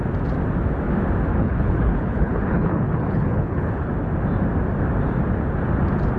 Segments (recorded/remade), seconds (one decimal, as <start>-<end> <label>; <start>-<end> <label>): 0.0-1.3 recorded; 1.3-3.9 remade; 3.9-6.2 recorded